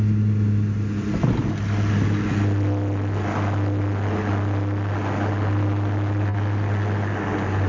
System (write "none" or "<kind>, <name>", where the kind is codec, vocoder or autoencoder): none